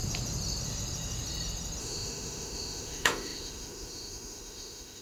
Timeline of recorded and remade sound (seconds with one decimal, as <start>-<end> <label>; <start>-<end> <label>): 0.0-1.8 recorded; 1.8-5.0 remade